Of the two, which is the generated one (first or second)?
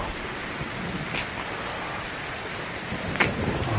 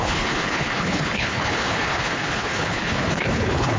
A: second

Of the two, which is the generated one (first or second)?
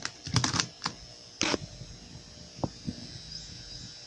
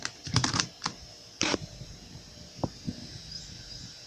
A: second